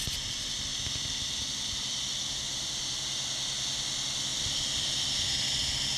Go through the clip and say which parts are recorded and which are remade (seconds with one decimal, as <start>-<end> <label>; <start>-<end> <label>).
0.0-0.7 recorded; 0.7-2.0 remade; 2.0-4.3 recorded; 4.3-5.5 remade; 5.5-6.0 recorded